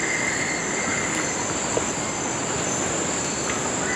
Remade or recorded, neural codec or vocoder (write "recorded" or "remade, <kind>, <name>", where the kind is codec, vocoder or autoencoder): recorded